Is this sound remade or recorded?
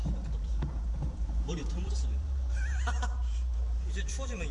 remade